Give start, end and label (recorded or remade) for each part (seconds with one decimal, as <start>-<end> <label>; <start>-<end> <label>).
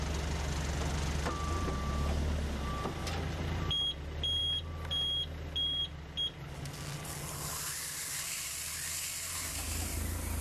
0.0-10.4 recorded